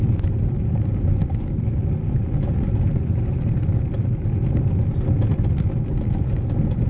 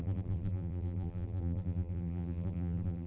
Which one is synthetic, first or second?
second